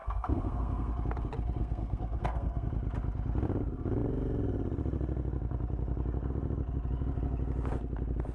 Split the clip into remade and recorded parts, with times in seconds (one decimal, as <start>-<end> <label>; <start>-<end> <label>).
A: 0.0-0.9 remade; 0.9-1.6 recorded; 1.6-2.7 remade; 2.7-8.3 recorded